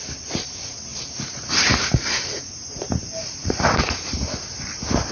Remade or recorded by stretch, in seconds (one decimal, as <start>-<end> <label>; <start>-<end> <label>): 0.0-5.1 remade